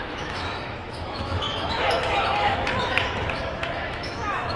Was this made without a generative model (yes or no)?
no